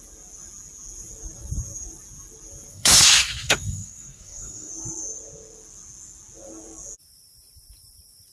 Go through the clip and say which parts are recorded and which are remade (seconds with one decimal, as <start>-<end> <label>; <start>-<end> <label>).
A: 0.0-2.7 recorded; 2.7-4.7 remade; 4.7-8.3 recorded